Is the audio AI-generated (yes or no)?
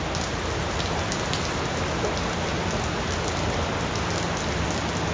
no